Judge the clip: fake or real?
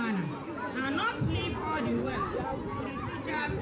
real